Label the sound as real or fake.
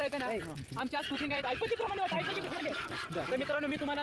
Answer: real